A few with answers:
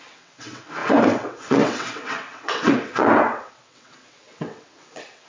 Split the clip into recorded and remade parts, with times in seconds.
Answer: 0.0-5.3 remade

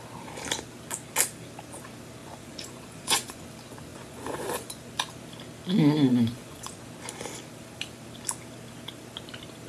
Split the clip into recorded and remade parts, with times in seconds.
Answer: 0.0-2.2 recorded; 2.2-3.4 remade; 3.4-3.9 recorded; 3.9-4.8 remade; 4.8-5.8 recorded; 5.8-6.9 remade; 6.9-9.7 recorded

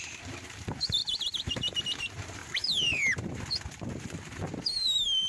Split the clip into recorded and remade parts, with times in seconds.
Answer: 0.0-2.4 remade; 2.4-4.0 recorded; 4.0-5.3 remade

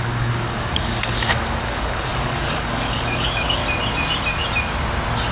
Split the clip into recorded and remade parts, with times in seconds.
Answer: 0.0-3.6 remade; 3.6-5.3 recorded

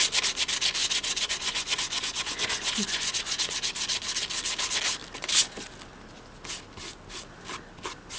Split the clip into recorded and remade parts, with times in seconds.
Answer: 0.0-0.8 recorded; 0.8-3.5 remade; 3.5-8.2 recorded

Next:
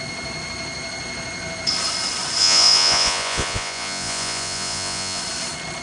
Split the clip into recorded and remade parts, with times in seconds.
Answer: 0.0-2.4 recorded; 2.4-5.2 remade; 5.2-5.8 recorded